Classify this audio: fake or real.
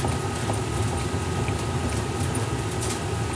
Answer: real